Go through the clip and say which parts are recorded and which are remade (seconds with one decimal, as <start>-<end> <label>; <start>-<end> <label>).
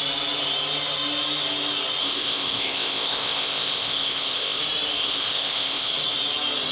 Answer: 0.0-2.0 recorded; 2.0-4.6 remade; 4.6-5.0 recorded; 5.0-5.9 remade; 5.9-6.7 recorded